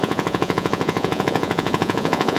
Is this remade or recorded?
remade